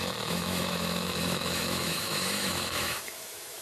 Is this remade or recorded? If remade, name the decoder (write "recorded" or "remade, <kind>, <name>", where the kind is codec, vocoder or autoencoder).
remade, autoencoder, DAC-VAE